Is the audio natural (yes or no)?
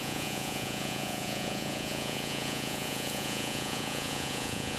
no